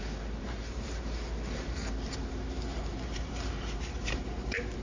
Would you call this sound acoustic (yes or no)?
no